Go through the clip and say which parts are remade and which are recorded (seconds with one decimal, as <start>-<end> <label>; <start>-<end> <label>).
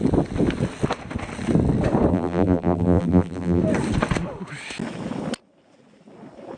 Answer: 0.0-2.1 recorded; 2.1-3.6 remade; 3.6-6.6 recorded